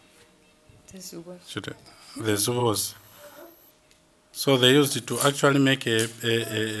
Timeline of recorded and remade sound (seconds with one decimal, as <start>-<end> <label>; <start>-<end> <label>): 0.0-2.6 recorded; 2.6-3.7 remade; 3.7-6.8 recorded